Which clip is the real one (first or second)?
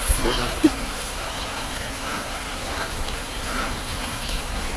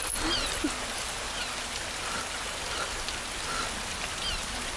second